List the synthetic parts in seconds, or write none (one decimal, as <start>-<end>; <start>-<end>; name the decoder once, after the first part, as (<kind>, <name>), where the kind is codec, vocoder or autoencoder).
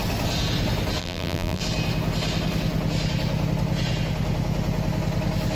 1.0-1.6 (vocoder, BigVGAN v2)